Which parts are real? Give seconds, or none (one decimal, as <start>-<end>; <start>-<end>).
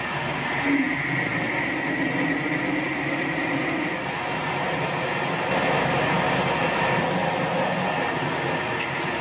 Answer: 0.0-9.2